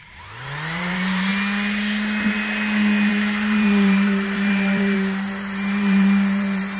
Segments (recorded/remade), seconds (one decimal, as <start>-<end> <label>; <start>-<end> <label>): 0.0-1.3 remade; 1.3-3.1 recorded; 3.1-6.8 remade